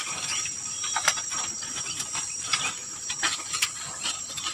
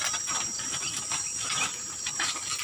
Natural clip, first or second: second